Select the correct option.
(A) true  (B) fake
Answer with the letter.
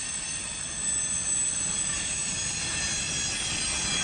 A